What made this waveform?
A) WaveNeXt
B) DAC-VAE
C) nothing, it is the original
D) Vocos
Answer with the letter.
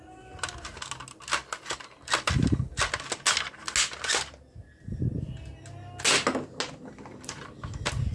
C